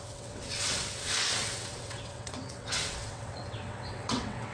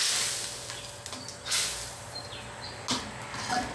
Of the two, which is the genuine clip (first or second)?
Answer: second